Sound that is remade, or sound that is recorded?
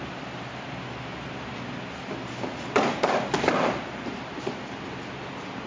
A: recorded